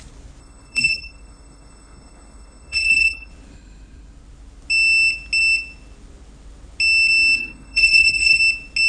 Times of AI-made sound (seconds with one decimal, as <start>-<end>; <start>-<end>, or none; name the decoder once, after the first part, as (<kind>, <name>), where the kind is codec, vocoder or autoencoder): 0.4-3.3 (codec, HILCodec); 7.4-8.4